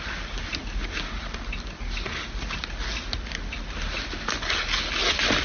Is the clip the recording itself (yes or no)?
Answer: yes